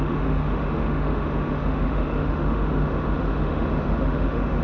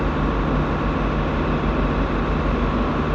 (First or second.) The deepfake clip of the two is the first